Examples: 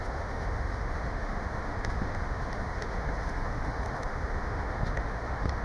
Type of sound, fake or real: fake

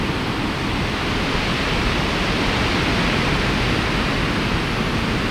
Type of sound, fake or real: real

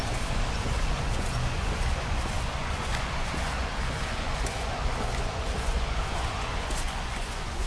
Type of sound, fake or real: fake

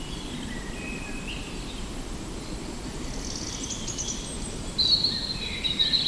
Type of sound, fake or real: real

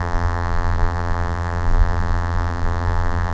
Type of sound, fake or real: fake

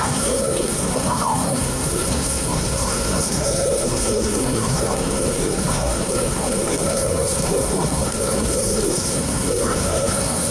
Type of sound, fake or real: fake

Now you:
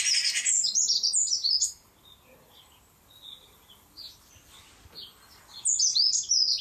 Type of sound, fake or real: real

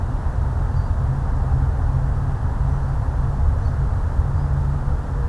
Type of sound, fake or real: real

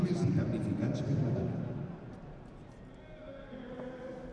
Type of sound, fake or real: real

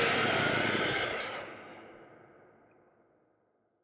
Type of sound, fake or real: real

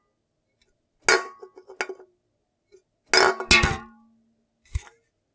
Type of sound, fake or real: real